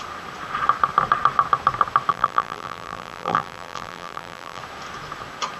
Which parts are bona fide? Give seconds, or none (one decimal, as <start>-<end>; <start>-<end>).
0.0-2.1; 4.6-5.6